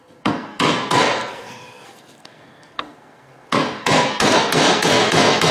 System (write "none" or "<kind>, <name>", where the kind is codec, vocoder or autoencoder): codec, SNAC